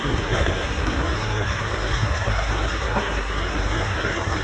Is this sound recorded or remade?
remade